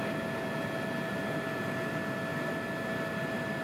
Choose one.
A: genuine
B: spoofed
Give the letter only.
A